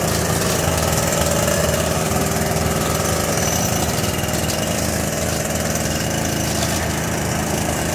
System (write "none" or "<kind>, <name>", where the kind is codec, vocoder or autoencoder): vocoder, BigVGAN v2